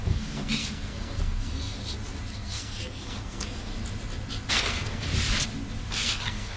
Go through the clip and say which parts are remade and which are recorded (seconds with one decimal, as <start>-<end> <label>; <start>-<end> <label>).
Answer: 0.0-1.8 remade; 1.8-2.3 recorded; 2.3-3.7 remade; 3.7-4.5 recorded; 4.5-5.1 remade; 5.1-5.9 recorded; 5.9-6.6 remade